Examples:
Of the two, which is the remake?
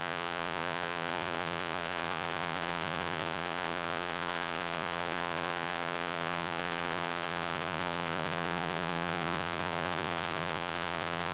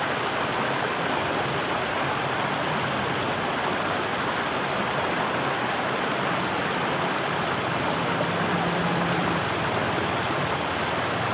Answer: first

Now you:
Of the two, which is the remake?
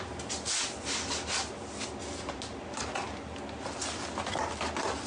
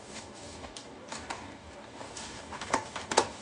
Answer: second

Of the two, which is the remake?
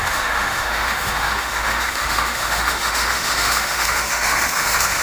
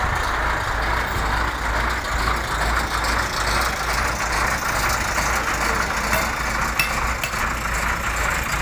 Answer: first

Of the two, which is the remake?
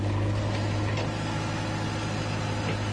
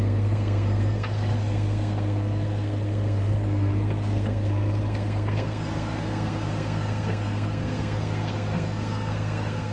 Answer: second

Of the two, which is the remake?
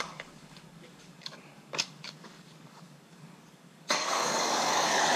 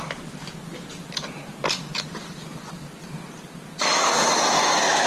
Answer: first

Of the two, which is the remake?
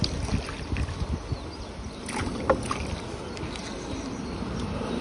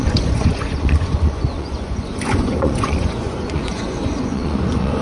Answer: second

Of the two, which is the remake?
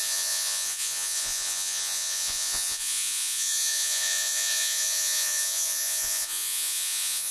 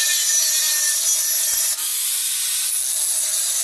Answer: first